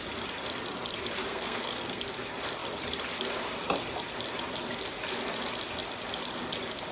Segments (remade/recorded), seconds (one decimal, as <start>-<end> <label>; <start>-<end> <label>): 0.0-1.3 recorded; 1.3-2.0 remade; 2.0-6.9 recorded